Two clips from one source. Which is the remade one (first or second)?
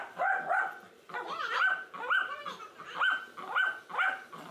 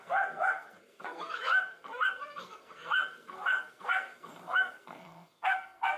second